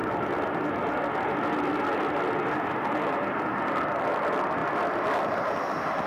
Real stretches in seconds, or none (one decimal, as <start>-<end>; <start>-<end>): 0.0-6.1